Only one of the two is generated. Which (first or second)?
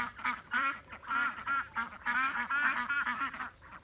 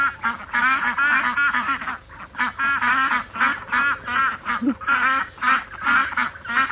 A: first